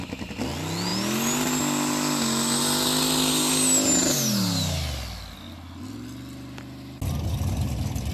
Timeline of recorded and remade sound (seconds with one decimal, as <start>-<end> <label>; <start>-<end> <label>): 0.0-8.1 recorded